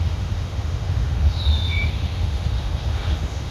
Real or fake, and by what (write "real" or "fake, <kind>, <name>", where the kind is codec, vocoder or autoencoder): fake, autoencoder, DAC-VAE